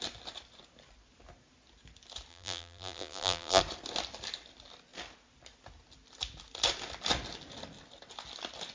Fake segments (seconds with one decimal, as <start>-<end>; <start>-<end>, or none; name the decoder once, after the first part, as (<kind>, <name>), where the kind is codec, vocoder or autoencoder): 2.3-3.6 (vocoder, BigVGAN v2)

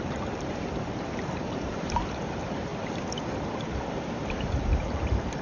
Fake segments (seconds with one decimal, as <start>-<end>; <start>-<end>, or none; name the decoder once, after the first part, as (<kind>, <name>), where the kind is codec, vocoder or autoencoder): 0.0-2.7 (vocoder, BigVGAN v2); 3.9-5.4

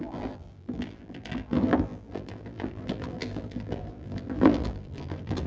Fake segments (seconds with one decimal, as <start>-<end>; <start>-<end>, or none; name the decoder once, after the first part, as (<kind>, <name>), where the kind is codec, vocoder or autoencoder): 0.0-5.5 (vocoder, BigVGAN v2)

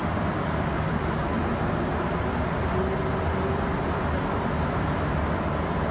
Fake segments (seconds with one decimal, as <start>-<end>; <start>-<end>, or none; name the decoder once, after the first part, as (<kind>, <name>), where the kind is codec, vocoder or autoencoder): 0.0-1.9 (vocoder, BigVGAN v2)